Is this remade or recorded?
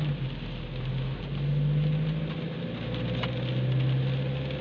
recorded